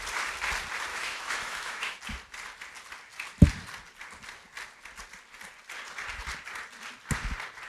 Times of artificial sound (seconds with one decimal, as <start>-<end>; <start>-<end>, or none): 0.9-2.0